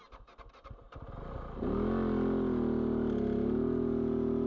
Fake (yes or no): no